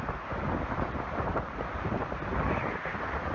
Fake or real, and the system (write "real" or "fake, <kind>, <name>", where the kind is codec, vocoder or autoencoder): real